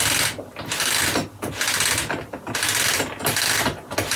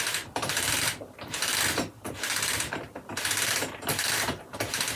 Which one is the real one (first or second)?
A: first